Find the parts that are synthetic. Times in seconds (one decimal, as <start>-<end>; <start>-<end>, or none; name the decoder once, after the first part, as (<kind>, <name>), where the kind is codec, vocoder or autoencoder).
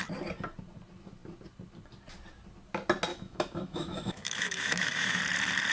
3.1-5.2 (autoencoder, DAC-VAE)